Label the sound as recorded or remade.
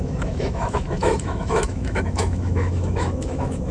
remade